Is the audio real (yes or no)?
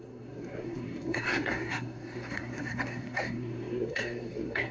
no